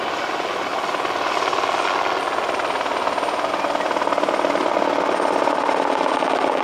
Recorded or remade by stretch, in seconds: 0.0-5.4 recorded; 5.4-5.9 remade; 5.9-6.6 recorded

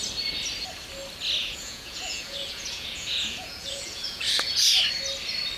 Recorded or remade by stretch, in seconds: 0.0-1.4 recorded; 1.4-4.8 remade; 4.8-5.6 recorded

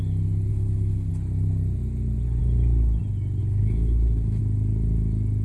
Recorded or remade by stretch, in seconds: 0.0-0.5 recorded; 0.5-1.1 remade; 1.1-3.4 recorded; 3.4-4.4 remade; 4.4-5.4 recorded

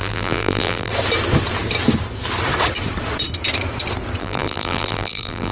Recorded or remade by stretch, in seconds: 0.0-0.9 remade; 0.9-4.2 recorded; 4.2-5.5 remade

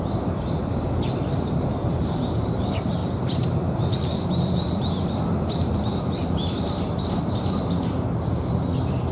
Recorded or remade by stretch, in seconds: 0.0-9.1 remade

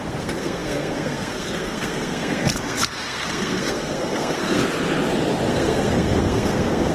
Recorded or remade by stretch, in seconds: 0.0-4.6 remade; 4.6-5.5 recorded; 5.5-6.9 remade

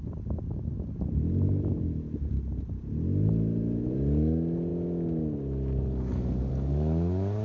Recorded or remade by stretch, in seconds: 0.0-7.4 recorded